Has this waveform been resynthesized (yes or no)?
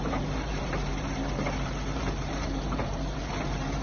yes